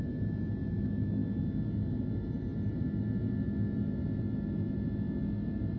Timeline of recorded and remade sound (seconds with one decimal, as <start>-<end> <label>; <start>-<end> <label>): 0.0-5.8 recorded